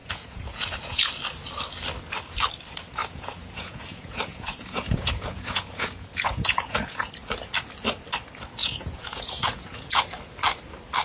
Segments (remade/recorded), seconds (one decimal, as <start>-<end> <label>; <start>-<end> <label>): 0.0-1.1 remade; 1.1-3.0 recorded; 3.0-7.1 remade; 7.1-8.6 recorded; 8.6-10.0 remade; 10.0-11.0 recorded